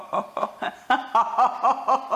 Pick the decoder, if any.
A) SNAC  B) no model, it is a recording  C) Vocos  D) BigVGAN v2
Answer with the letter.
B